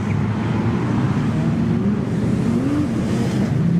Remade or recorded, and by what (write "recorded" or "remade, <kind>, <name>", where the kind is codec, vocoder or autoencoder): recorded